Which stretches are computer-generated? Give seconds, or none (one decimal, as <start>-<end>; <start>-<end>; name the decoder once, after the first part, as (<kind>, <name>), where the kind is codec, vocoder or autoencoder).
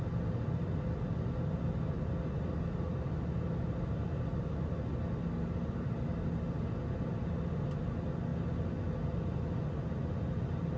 none